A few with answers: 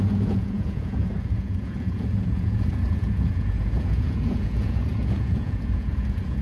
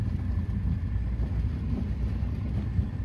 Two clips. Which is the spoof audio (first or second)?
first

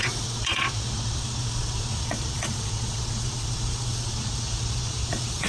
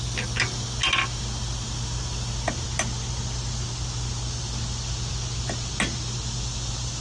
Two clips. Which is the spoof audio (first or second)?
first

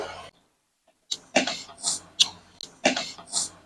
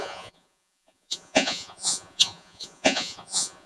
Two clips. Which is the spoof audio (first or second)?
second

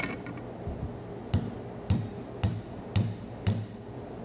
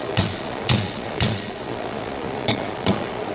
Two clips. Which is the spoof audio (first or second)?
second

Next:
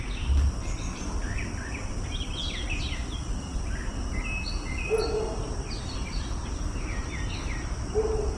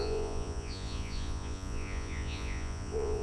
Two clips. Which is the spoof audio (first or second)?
second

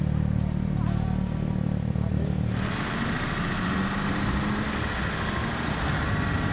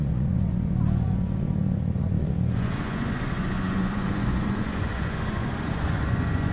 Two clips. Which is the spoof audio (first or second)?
second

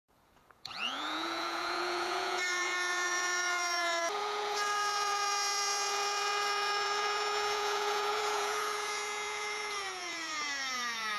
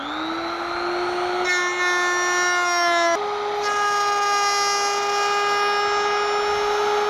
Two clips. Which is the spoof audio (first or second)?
first